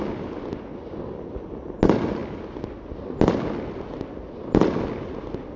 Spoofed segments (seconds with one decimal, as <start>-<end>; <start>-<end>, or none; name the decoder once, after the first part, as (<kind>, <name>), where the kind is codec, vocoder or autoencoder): none

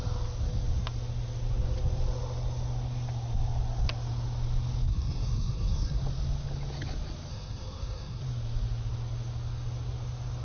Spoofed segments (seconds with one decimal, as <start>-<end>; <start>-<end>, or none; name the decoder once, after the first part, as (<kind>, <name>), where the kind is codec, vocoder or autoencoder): 4.9-6.0 (codec, SNAC); 7.3-8.2

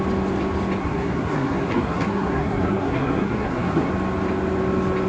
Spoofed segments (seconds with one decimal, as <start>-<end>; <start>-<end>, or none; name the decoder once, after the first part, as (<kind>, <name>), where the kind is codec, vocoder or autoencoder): 0.8-3.9 (codec, SNAC)

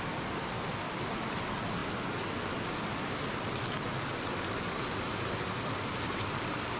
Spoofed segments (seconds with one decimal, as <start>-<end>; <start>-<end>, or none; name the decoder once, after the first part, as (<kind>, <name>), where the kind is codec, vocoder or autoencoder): none

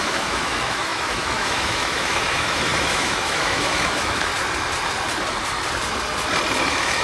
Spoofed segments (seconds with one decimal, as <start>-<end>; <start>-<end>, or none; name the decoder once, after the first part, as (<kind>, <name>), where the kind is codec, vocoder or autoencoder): 0.0-4.3 (autoencoder, DAC-VAE); 6.6-7.0

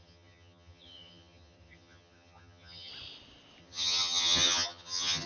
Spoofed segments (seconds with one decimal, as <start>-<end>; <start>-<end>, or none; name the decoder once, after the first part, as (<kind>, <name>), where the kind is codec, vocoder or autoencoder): 0.0-2.9 (vocoder, HiFi-GAN); 3.6-5.3